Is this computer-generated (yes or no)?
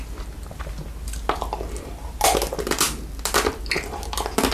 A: no